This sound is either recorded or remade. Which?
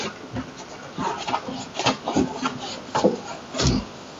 recorded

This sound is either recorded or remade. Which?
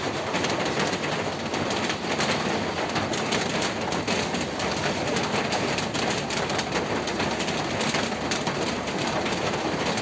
recorded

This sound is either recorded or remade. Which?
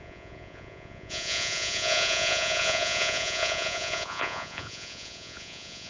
remade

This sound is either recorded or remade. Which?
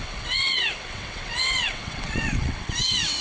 remade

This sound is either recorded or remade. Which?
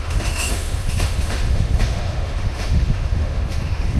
remade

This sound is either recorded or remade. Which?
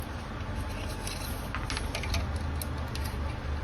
recorded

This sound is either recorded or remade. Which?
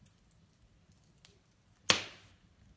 recorded